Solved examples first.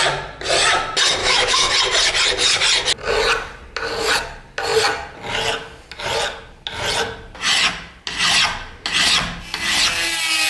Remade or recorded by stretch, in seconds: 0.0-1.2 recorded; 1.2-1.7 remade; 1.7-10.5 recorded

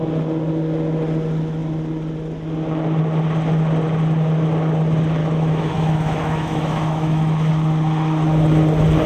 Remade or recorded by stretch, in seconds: 0.0-5.2 recorded; 5.2-7.5 remade; 7.5-9.1 recorded

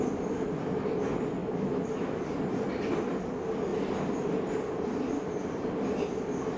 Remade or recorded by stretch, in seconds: 0.0-1.4 recorded; 1.4-2.2 remade; 2.2-6.6 recorded

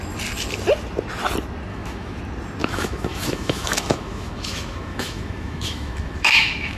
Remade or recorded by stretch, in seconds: 0.0-1.7 recorded; 1.7-2.2 remade; 2.2-2.6 recorded; 2.6-6.8 remade

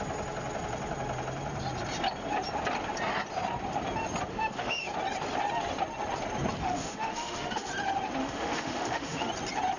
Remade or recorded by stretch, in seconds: 0.0-4.3 recorded; 4.3-4.8 remade; 4.8-6.6 recorded; 6.6-7.7 remade; 7.7-8.2 recorded; 8.2-9.3 remade; 9.3-9.8 recorded

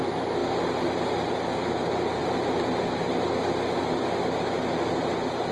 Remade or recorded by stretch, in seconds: 0.0-5.5 recorded